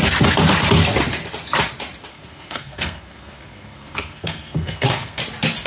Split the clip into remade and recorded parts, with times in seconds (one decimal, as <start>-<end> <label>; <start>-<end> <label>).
0.0-2.1 recorded; 2.1-5.2 remade; 5.2-5.7 recorded